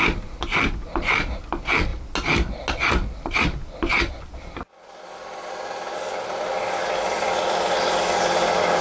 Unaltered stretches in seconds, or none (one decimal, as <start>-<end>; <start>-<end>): 0.0-8.8